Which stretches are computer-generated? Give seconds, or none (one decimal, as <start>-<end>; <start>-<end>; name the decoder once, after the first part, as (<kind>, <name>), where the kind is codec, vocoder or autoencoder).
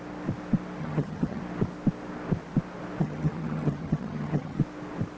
0.8-1.4 (vocoder, HiFi-GAN); 3.0-4.6